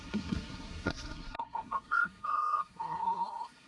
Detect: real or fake fake